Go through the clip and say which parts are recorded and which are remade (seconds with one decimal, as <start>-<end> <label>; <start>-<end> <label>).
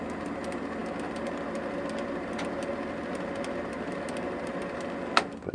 0.0-5.5 recorded